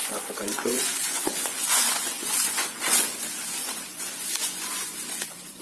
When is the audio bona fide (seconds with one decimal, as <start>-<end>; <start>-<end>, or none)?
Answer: none